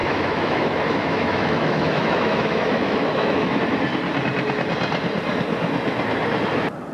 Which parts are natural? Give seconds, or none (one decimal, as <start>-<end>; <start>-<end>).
3.6-6.9